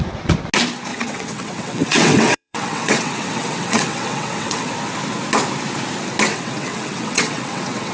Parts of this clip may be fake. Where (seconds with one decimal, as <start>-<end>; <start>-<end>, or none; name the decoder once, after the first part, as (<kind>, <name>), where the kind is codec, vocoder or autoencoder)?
0.9-4.7 (vocoder, WaveNeXt); 6.3-7.9